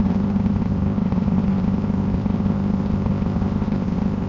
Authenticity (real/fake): fake